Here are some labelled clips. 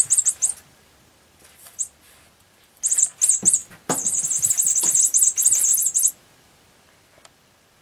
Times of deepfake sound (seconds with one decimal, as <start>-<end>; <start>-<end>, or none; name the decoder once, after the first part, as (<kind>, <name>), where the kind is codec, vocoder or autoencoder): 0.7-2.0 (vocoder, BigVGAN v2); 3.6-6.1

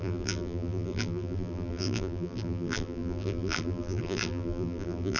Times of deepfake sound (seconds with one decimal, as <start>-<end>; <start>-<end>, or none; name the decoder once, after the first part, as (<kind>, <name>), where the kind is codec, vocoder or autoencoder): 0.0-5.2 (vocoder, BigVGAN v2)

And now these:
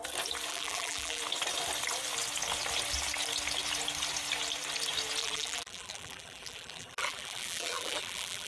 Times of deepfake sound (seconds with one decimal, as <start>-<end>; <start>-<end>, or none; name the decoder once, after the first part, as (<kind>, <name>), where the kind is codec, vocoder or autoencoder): 0.5-1.2 (vocoder, BigVGAN v2); 5.2-8.5

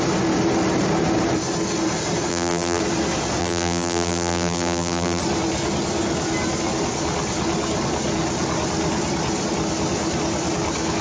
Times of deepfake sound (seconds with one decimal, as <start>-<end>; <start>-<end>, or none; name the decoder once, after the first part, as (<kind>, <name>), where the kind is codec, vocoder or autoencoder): 2.3-2.8 (vocoder, BigVGAN v2); 3.4-5.2

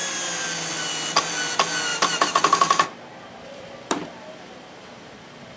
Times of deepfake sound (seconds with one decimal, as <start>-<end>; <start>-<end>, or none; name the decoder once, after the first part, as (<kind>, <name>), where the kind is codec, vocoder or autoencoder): 1.9-5.6 (vocoder, BigVGAN v2)

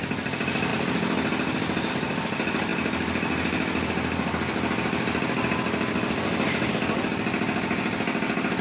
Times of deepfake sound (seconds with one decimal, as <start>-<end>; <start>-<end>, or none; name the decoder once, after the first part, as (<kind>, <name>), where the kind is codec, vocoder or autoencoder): 0.7-1.9 (vocoder, BigVGAN v2)

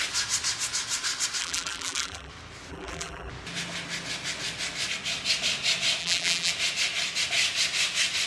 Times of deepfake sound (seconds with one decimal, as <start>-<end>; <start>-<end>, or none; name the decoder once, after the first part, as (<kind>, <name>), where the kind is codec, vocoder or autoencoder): 1.4-2.3 (vocoder, BigVGAN v2); 2.7-3.3; 6.0-6.5

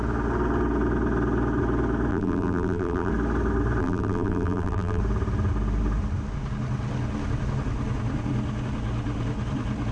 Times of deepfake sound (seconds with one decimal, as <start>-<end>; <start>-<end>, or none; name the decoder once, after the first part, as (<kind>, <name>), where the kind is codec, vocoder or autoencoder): 2.1-3.1 (vocoder, BigVGAN v2); 3.8-5.0